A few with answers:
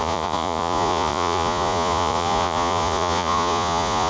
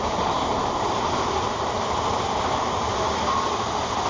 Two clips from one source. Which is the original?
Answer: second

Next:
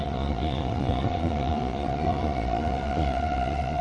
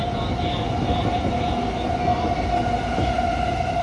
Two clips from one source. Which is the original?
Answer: second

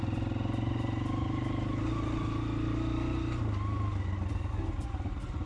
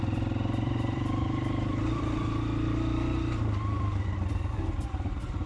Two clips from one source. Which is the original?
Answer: first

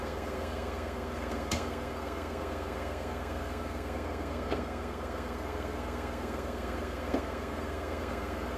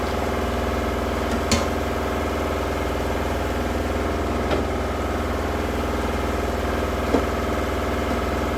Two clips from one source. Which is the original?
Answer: second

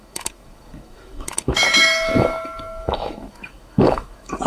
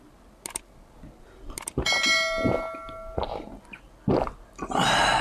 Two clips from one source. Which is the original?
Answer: second